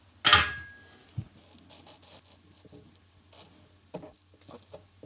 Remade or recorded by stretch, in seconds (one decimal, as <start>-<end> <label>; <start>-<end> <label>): 0.0-5.1 recorded